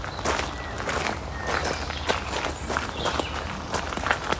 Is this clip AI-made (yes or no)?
no